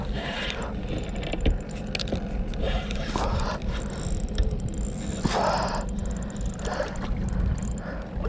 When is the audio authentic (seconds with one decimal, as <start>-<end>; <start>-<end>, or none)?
0.0-8.3

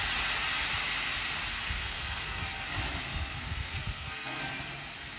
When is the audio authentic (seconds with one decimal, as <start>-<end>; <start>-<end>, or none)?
0.0-1.5; 2.4-3.1; 4.4-5.2

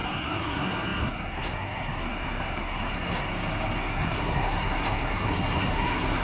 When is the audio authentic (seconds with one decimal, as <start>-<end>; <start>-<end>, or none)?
3.3-3.8

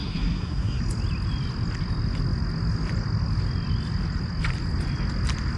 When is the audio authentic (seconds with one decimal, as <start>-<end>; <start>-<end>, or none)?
0.8-5.6

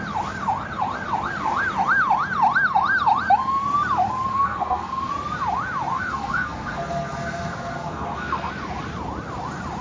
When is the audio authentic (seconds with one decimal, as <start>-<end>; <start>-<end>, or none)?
0.0-4.3; 5.1-5.9; 8.5-9.8